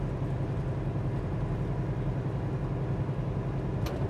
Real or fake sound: real